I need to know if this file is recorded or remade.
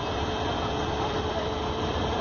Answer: remade